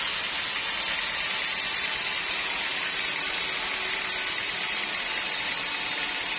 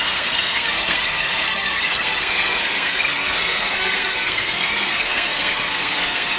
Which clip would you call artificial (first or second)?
second